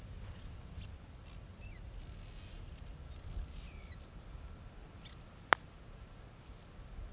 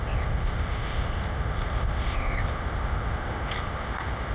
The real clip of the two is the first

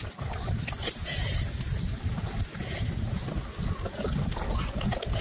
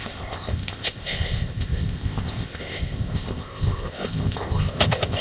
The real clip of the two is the first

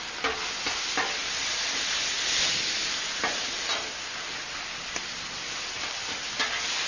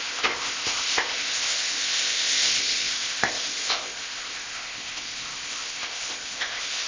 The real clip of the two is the first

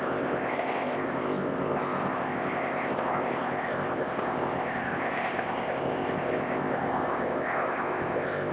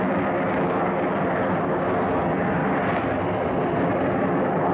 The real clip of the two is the second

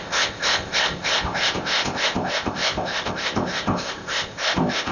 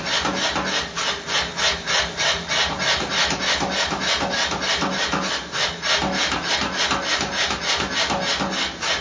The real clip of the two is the second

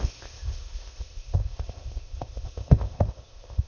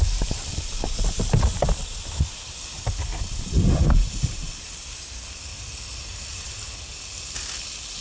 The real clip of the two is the second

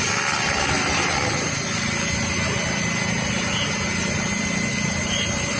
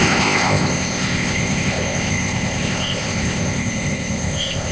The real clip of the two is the first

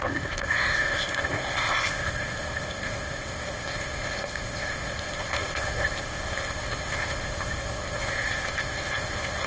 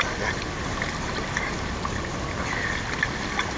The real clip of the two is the second